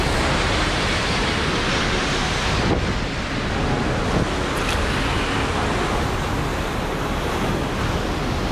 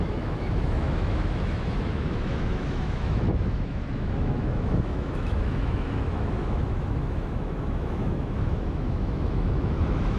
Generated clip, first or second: second